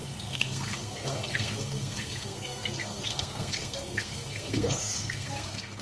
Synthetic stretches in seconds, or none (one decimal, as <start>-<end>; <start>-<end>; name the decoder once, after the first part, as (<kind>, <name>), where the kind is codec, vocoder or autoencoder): 0.0-5.8 (codec, SNAC)